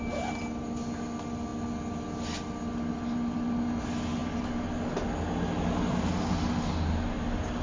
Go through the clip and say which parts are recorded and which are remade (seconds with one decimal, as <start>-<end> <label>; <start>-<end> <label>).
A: 0.0-7.6 recorded